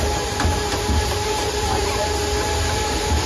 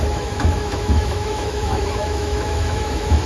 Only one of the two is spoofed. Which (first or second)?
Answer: second